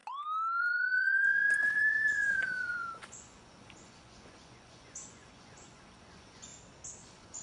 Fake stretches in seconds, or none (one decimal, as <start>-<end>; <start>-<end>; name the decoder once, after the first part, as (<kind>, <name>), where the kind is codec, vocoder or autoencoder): 0.6-6.5 (vocoder, Vocos); 7.0-7.4